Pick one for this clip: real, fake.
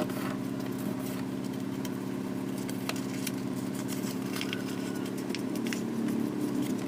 fake